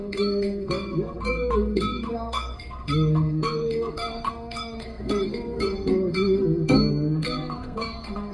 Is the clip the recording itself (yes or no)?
no